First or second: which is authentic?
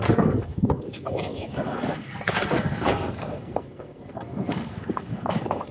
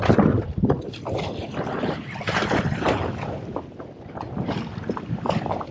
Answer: second